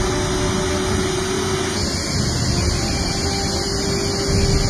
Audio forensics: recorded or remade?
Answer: recorded